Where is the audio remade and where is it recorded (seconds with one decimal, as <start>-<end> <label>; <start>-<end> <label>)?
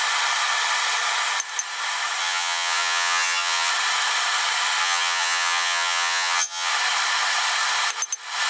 0.0-2.2 recorded; 2.2-3.7 remade; 3.7-4.8 recorded; 4.8-6.7 remade; 6.7-8.5 recorded